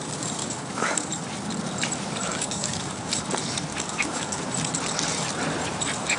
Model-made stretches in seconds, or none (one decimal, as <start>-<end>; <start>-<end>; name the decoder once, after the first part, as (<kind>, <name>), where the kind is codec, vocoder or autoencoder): 0.4-1.1 (codec, DAC); 2.3-3.2; 3.7-4.4